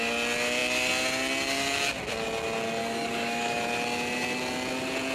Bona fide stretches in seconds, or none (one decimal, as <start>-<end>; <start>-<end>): 0.0-2.8; 3.6-5.1